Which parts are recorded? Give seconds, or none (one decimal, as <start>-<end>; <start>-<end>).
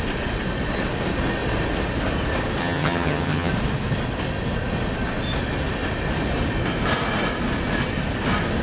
0.0-2.6; 3.5-8.6